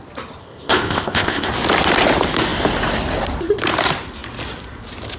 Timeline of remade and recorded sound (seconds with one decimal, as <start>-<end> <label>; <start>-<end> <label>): 0.0-0.4 recorded; 0.4-1.5 remade; 1.5-5.2 recorded